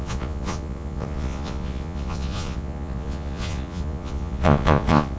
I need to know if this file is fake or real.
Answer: fake